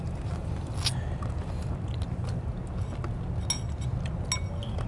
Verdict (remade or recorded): recorded